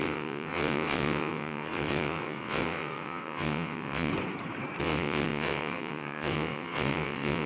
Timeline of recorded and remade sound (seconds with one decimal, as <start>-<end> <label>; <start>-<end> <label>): 0.0-4.1 remade; 4.1-4.8 recorded; 4.8-7.5 remade